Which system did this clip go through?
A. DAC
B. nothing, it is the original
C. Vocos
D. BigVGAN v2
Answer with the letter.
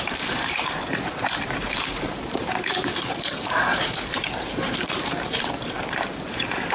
D